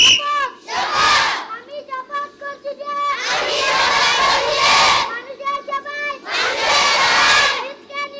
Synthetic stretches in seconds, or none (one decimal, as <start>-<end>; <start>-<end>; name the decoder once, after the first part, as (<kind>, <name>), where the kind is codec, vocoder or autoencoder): none